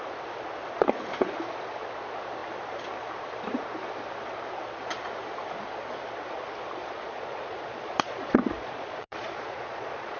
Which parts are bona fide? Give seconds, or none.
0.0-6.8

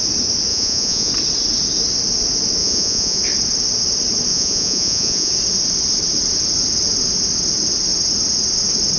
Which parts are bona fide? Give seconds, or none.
0.0-0.5; 1.1-2.6; 3.2-4.3; 5.3-9.0

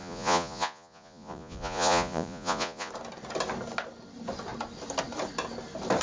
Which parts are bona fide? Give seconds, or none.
2.9-6.0

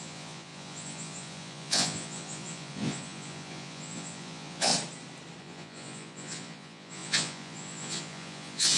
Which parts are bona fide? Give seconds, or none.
4.7-5.4